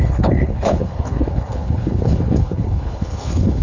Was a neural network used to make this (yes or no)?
yes